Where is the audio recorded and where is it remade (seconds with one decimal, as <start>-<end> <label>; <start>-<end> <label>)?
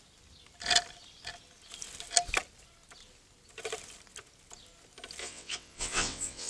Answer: 0.0-5.2 recorded; 5.2-6.5 remade